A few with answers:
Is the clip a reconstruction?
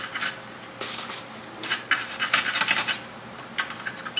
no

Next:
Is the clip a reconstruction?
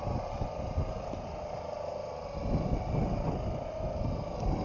no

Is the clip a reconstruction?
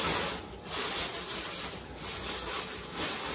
no